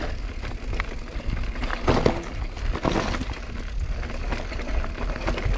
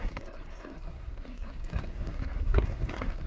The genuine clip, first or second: first